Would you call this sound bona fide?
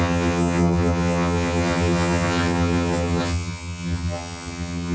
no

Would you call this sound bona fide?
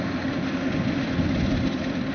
yes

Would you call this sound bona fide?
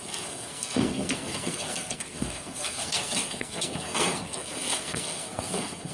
no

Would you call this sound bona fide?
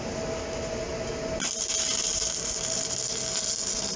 yes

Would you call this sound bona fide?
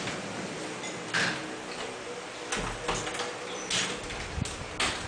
yes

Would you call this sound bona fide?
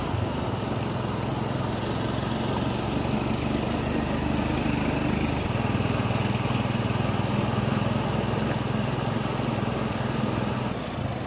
yes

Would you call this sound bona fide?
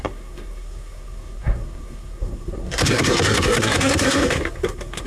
no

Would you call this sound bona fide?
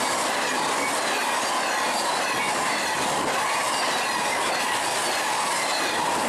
yes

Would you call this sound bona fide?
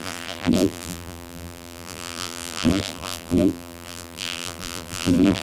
no